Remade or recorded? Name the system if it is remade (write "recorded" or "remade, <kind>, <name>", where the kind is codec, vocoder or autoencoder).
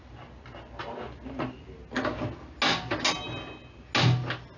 recorded